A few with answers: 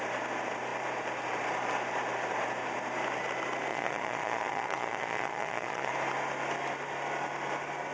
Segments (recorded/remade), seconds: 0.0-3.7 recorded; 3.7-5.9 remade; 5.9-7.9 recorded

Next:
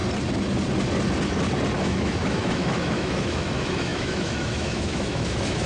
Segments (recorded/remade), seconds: 0.0-1.8 recorded; 1.8-5.7 remade

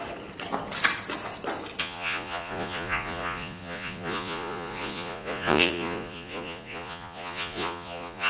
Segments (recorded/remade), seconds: 0.0-1.8 recorded; 1.8-8.3 remade

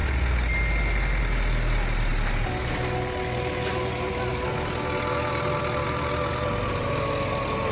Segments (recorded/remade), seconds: 0.0-7.7 recorded